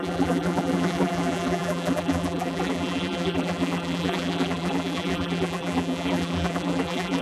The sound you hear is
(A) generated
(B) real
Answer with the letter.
A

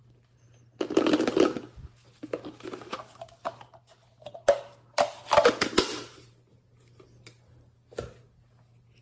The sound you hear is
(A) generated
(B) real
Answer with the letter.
B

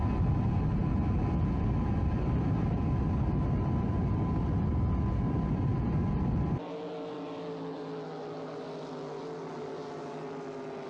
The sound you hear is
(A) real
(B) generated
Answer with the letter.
A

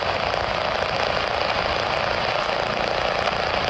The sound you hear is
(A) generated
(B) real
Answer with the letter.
B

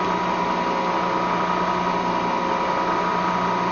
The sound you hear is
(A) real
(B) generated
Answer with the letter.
A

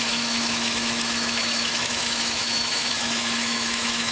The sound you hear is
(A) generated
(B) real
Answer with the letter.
A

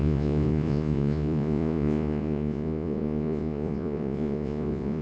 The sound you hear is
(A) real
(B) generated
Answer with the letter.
B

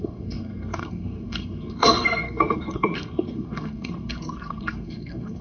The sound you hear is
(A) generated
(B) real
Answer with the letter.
A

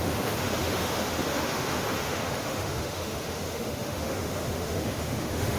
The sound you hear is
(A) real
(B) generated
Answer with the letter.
B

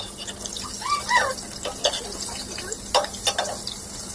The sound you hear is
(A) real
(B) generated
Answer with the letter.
A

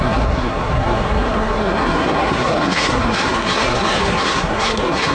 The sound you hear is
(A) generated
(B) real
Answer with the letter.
A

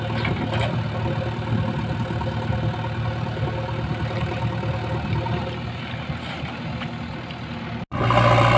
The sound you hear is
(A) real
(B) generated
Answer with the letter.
A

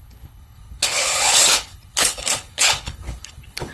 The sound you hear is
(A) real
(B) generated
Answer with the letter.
B